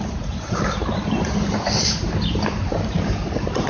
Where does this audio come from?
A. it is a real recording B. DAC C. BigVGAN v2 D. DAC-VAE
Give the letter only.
C